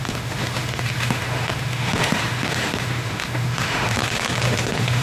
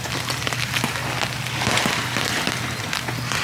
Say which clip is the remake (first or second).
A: first